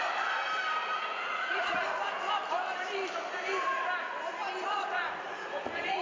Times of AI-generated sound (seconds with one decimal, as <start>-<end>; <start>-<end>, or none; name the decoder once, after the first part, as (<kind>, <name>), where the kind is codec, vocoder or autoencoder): 0.8-2.3 (vocoder, Vocos); 4.7-6.0